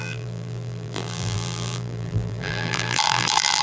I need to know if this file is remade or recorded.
remade